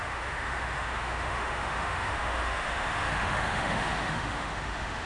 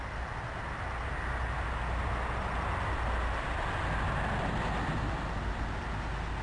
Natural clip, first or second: second